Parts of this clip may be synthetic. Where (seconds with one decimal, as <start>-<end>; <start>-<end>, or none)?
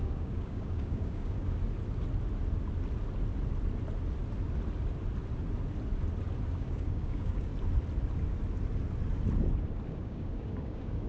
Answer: 0.0-1.6; 6.5-7.5; 9.9-11.1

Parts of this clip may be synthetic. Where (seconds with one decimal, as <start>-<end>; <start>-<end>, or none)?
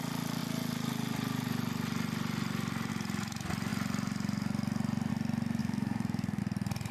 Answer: 5.6-6.4